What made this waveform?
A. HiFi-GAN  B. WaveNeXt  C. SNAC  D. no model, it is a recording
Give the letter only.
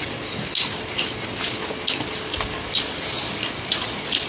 D